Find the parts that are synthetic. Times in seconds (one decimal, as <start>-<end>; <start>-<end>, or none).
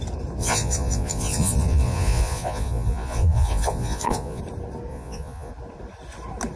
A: 0.4-4.4; 4.9-5.5